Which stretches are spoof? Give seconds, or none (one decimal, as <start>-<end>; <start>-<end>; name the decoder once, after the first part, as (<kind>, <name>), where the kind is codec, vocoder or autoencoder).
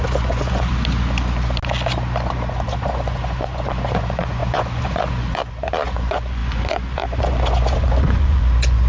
0.0-0.7 (vocoder, Vocos); 2.5-8.9